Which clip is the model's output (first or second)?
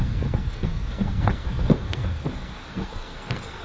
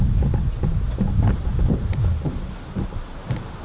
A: first